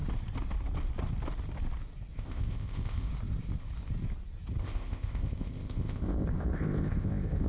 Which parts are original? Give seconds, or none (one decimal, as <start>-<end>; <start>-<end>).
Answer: 0.0-2.1; 3.1-4.6